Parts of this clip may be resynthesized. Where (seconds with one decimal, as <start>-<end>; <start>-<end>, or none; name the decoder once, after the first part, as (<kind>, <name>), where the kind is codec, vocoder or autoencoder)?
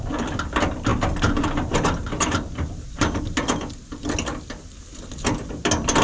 0.9-3.2 (vocoder, BigVGAN v2)